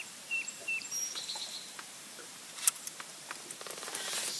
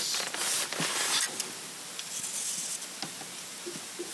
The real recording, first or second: second